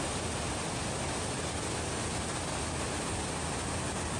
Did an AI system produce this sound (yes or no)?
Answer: no